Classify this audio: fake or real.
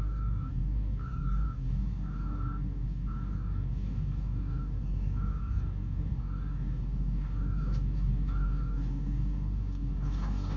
fake